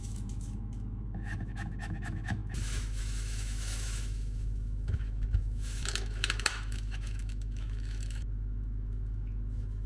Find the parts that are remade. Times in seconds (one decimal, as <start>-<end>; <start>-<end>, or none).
0.0-9.9